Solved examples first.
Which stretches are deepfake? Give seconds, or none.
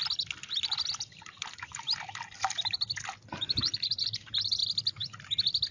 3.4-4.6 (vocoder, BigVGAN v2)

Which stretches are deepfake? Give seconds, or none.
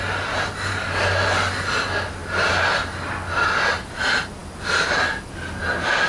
none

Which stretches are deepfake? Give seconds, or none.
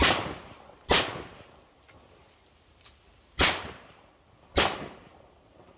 2.2-4.1 (vocoder, BigVGAN v2)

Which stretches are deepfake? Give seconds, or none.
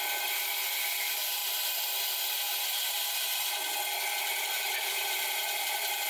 none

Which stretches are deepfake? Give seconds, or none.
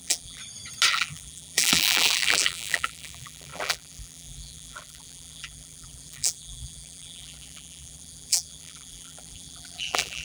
0.0-0.4 (vocoder, BigVGAN v2); 0.9-10.2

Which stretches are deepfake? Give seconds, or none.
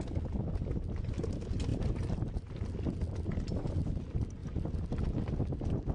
1.7-2.5 (vocoder, BigVGAN v2)